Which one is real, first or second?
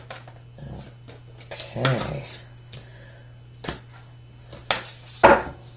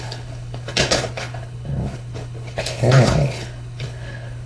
first